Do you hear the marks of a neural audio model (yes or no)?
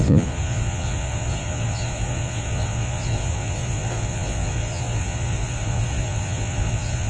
yes